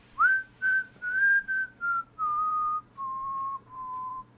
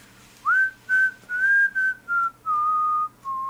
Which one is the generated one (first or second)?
first